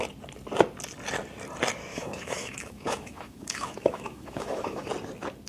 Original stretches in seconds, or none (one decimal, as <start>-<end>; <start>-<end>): 0.0-1.9; 4.9-5.5